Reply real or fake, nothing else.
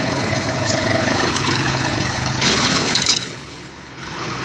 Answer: fake